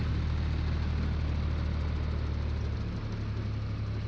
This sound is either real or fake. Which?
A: real